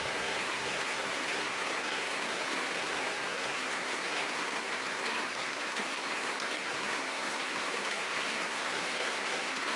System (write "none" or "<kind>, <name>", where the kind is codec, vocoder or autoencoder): codec, SNAC